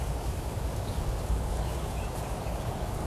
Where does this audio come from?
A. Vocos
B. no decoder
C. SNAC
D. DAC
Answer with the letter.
D